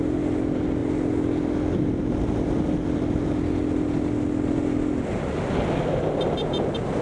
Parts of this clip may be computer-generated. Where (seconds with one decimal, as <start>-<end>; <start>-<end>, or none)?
none